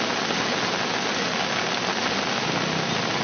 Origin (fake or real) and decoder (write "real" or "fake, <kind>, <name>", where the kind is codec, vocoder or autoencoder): real